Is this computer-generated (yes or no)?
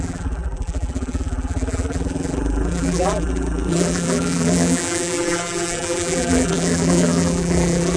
yes